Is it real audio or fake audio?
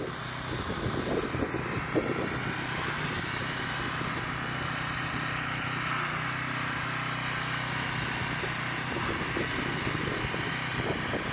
real